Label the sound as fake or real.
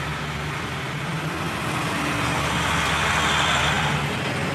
real